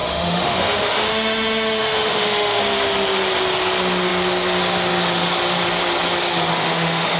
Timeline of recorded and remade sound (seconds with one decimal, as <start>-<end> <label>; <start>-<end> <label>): 0.0-2.6 remade; 2.6-6.5 recorded; 6.5-7.2 remade